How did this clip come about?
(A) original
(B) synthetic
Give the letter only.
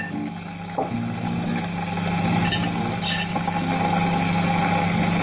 A